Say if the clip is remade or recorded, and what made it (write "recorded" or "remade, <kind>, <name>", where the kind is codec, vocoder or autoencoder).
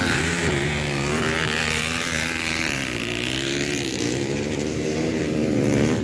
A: remade, vocoder, BigVGAN v2